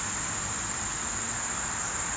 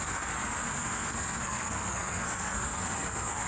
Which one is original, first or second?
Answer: first